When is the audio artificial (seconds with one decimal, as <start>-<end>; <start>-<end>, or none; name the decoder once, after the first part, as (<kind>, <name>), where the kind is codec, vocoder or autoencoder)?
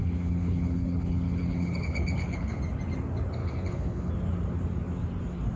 0.0-2.6 (codec, HILCodec); 3.4-4.1